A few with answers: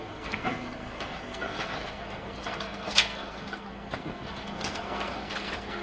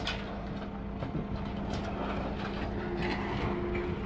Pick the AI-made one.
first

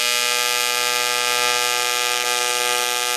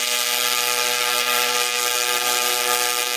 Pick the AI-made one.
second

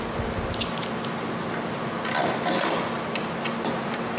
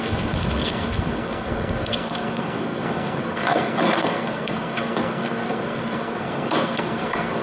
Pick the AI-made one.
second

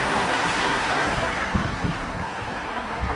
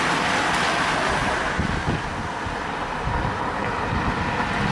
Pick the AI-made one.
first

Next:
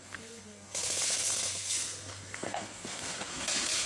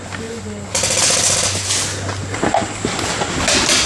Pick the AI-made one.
first